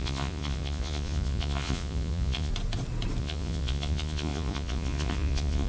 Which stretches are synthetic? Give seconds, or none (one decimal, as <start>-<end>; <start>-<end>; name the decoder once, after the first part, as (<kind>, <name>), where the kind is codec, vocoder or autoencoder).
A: 0.0-2.5 (vocoder, Vocos); 3.2-5.7